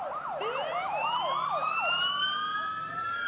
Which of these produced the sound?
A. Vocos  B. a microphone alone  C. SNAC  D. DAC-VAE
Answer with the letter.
B